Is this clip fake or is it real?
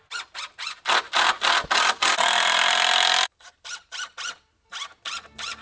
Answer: real